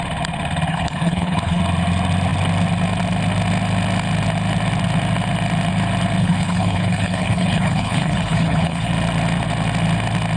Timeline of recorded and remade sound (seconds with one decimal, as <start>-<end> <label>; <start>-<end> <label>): 0.0-0.7 recorded; 0.7-1.6 remade; 1.6-6.2 recorded; 6.2-8.9 remade; 8.9-10.4 recorded